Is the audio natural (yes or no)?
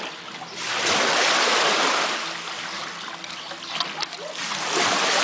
no